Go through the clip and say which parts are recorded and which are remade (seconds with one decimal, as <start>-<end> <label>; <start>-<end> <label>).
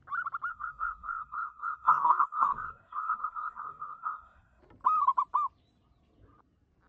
0.0-0.5 recorded; 0.5-4.6 remade; 4.6-6.9 recorded